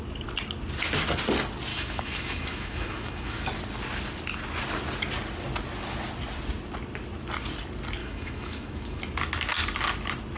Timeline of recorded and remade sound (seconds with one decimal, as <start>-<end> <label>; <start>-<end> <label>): 0.0-1.7 recorded; 1.7-3.4 remade; 3.4-8.0 recorded; 8.0-9.0 remade; 9.0-10.4 recorded